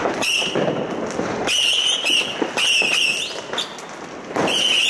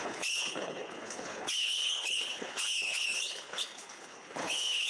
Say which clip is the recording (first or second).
first